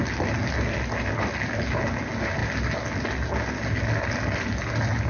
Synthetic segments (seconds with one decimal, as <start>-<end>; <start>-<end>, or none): none